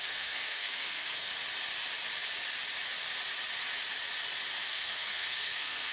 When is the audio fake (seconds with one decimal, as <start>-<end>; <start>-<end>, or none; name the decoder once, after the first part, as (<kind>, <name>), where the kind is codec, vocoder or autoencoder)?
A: 0.0-1.3 (codec, SNAC); 4.6-5.9